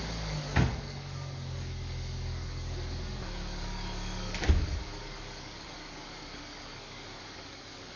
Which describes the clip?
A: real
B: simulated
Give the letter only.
B